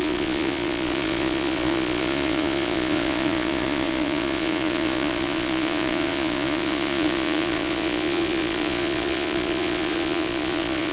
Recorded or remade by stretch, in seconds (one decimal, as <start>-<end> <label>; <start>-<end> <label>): 0.0-10.9 remade

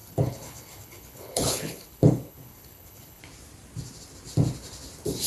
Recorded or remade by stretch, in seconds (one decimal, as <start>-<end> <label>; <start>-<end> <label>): 0.0-3.2 remade; 3.2-5.3 recorded